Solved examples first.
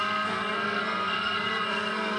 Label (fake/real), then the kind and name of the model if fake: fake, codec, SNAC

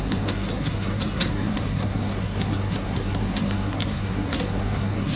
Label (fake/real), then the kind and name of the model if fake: fake, codec, SNAC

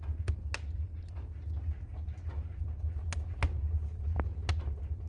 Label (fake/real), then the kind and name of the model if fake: real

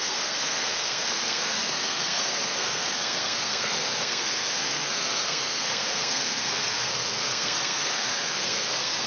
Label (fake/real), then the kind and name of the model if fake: fake, codec, SNAC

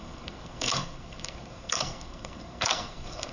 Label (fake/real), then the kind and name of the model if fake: fake, codec, SNAC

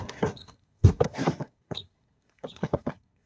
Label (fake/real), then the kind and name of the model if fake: fake, codec, SNAC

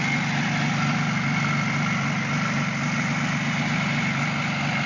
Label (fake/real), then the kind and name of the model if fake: real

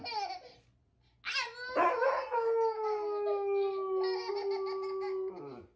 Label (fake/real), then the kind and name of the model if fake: real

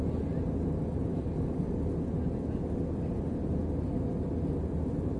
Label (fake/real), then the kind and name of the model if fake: real